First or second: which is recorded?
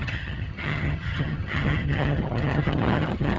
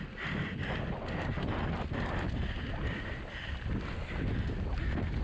second